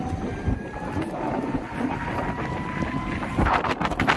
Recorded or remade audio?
recorded